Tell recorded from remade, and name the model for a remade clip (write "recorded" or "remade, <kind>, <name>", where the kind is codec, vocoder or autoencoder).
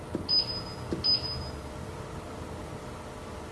recorded